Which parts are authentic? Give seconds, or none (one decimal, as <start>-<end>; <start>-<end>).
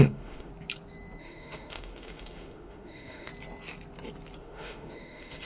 0.5-1.2; 3.3-4.4